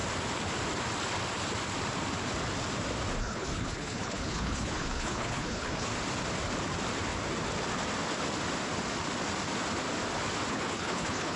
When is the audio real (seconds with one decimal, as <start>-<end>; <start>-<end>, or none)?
0.0-3.2; 5.9-10.5